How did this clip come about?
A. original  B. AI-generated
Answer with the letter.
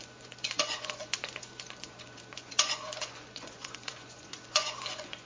B